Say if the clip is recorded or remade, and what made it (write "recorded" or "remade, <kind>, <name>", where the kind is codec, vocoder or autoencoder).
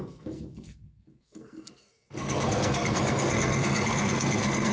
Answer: remade, codec, SNAC